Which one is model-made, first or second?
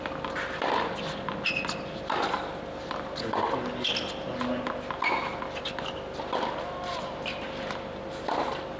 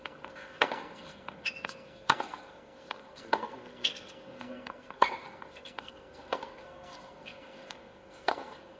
second